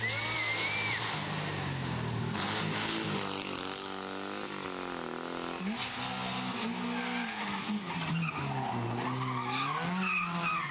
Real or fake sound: real